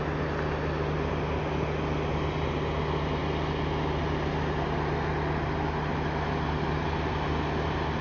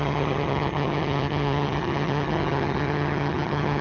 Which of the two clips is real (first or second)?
first